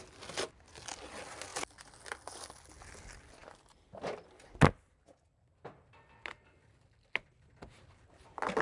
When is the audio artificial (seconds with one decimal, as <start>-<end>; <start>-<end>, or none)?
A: none